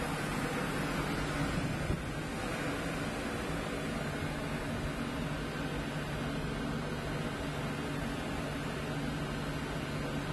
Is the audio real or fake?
real